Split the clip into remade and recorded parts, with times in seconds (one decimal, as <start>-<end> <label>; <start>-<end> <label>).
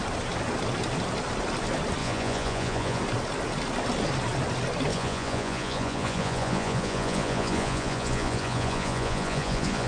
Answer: 0.0-2.0 recorded; 2.0-3.0 remade; 3.0-4.9 recorded; 4.9-9.9 remade